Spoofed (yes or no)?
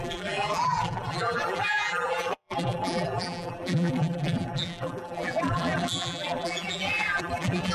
yes